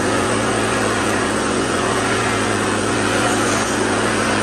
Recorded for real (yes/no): no